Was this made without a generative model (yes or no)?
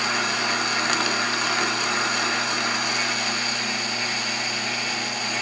yes